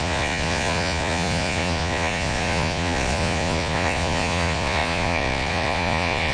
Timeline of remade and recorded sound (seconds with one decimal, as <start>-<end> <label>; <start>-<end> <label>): 0.0-6.3 remade